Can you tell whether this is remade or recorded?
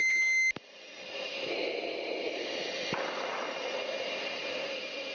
recorded